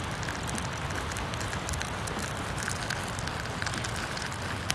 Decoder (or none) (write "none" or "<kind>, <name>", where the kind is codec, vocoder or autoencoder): none